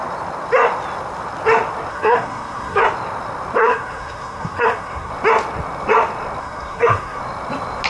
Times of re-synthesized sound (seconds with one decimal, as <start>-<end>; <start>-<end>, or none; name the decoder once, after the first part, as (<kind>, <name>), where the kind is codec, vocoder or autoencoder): 1.9-2.8 (codec, SNAC); 3.6-5.1; 6.4-7.2